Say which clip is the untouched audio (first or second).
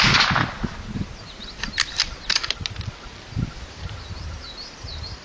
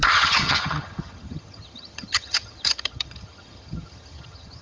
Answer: first